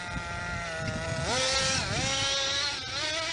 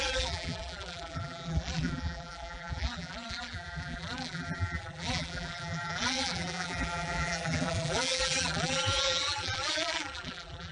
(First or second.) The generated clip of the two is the second